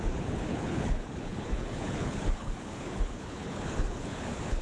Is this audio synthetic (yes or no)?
yes